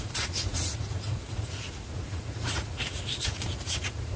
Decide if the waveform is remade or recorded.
remade